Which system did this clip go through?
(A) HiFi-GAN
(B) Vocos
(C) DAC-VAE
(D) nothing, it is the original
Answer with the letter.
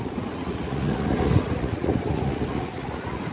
B